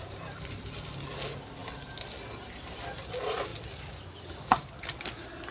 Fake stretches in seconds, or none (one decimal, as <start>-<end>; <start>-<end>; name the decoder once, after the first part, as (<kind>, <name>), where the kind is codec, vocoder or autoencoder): none